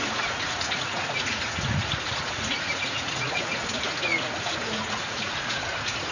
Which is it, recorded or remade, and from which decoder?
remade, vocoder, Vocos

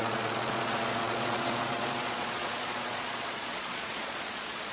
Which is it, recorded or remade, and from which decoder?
remade, vocoder, Vocos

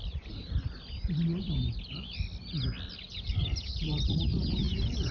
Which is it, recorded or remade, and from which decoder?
recorded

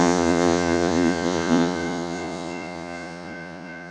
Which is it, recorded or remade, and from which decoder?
remade, vocoder, Vocos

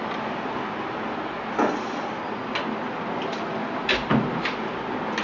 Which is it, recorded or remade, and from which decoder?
recorded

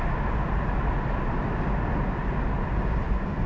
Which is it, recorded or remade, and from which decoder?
recorded